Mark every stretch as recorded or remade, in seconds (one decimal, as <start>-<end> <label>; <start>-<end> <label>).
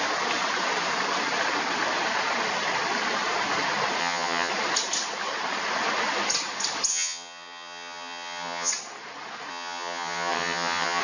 0.0-4.0 recorded; 4.0-4.5 remade; 4.5-6.9 recorded; 6.9-8.7 remade; 8.7-9.5 recorded; 9.5-11.0 remade